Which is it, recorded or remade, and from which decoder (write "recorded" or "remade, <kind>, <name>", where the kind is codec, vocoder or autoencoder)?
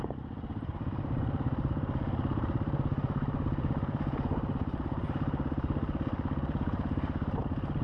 remade, vocoder, BigVGAN v2